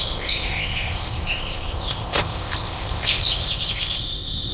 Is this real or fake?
fake